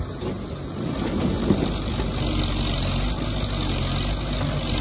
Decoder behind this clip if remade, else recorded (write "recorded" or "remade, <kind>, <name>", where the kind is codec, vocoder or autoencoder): recorded